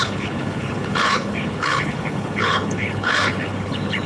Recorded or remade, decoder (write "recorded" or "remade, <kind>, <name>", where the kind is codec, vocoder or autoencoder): remade, codec, HILCodec